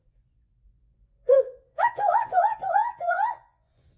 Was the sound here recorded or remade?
remade